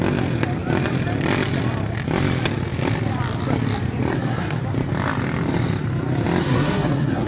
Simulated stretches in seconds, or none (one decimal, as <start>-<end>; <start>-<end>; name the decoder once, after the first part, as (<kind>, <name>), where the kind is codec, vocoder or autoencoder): 4.1-4.6 (codec, SNAC); 6.4-7.3